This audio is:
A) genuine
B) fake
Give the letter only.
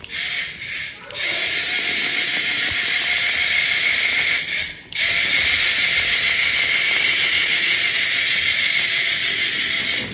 A